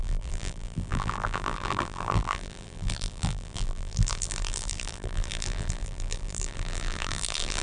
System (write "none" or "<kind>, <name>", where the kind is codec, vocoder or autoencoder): vocoder, BigVGAN v2